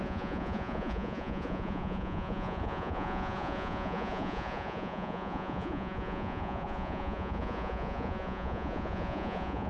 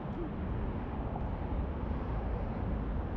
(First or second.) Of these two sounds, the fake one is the first